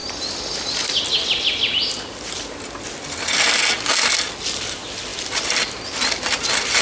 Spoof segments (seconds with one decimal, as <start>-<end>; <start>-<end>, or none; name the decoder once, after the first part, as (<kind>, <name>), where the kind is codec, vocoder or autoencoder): none